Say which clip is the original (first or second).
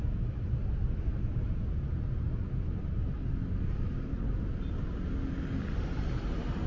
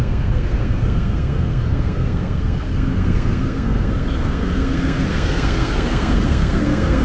first